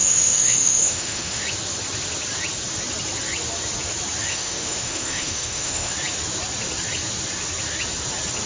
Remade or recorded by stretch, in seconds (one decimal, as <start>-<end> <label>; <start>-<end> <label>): 0.0-1.4 remade; 1.4-4.3 recorded; 4.3-5.9 remade; 5.9-8.5 recorded